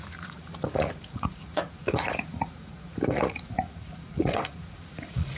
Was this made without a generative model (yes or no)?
no